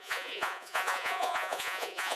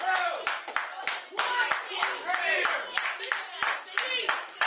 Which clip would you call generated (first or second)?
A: first